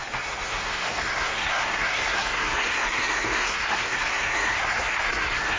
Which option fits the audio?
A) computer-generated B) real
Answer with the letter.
A